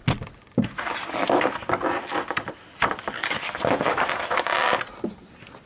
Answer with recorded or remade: recorded